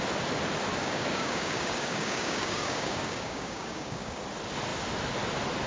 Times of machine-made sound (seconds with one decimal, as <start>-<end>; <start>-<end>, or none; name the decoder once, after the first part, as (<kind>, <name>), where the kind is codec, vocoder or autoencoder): 0.8-4.2 (codec, DAC)